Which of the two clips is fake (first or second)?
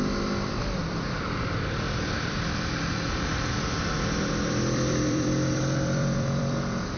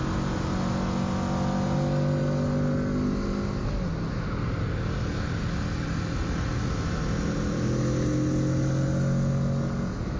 first